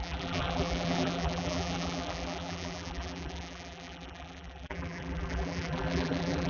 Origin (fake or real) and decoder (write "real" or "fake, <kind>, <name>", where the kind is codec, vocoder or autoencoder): fake, vocoder, BigVGAN v2